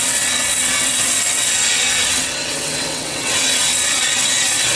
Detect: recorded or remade remade